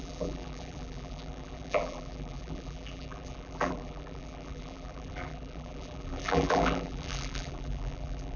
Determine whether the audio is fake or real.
fake